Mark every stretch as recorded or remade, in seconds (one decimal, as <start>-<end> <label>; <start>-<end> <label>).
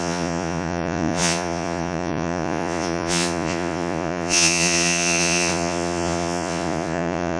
0.0-7.4 remade